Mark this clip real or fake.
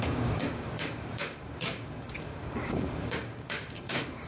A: fake